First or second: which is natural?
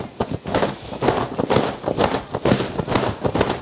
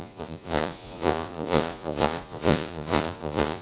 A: first